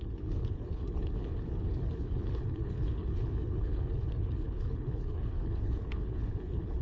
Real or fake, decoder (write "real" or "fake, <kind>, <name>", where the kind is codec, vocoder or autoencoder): fake, codec, HILCodec